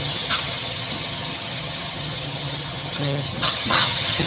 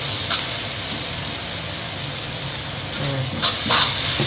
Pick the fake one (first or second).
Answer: first